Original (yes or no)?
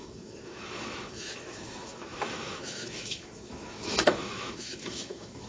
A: no